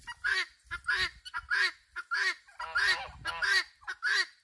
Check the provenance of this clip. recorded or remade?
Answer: recorded